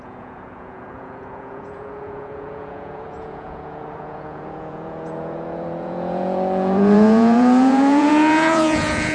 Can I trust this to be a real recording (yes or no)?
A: no